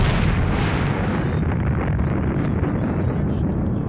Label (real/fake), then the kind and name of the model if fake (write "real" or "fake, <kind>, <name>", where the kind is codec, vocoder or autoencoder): real